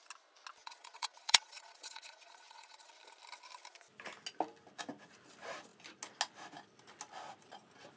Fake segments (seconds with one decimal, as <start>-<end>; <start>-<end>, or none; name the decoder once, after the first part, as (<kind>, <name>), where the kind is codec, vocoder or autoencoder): 0.6-2.9 (vocoder, Vocos)